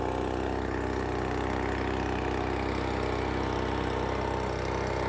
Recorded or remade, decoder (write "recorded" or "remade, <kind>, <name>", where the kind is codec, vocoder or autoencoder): recorded